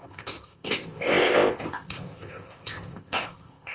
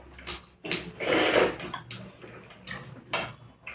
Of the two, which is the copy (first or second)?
first